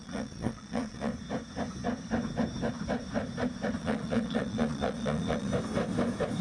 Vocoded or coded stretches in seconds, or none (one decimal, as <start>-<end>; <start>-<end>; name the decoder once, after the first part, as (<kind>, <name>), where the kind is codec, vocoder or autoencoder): 0.0-1.1 (vocoder, Vocos); 3.8-5.5